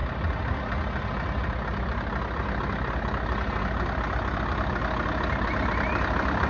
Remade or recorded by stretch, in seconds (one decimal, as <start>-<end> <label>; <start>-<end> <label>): 0.0-6.5 recorded